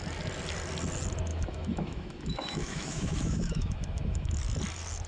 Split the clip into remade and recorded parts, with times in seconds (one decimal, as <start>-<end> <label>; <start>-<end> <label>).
0.0-1.3 recorded; 1.3-4.4 remade; 4.4-5.1 recorded